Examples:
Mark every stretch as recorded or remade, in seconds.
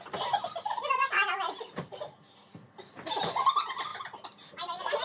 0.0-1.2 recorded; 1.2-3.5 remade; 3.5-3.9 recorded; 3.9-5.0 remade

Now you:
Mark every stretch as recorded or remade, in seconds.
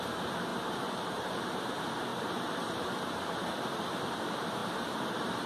0.0-0.5 recorded; 0.5-1.7 remade; 1.7-2.1 recorded; 2.1-3.8 remade; 3.8-4.6 recorded; 4.6-5.5 remade